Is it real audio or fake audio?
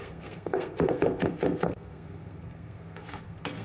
fake